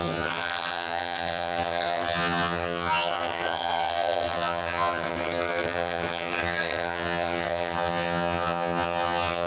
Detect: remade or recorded remade